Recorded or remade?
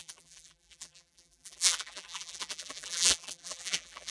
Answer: remade